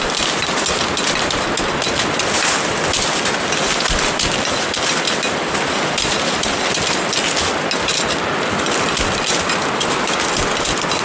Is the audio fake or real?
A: real